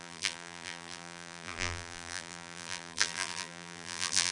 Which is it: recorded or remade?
remade